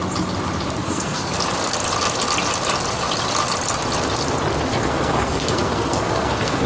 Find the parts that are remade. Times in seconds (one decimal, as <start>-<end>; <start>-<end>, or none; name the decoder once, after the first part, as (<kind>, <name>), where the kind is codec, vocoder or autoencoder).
0.8-1.3 (codec, SNAC); 4.7-6.7